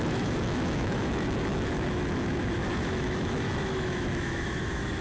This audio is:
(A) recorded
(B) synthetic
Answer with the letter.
B